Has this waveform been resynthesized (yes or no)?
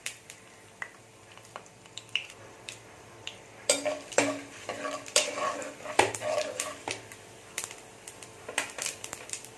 yes